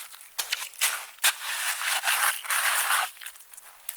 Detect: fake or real real